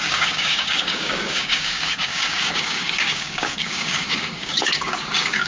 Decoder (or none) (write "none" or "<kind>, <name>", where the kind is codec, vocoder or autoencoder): codec, DAC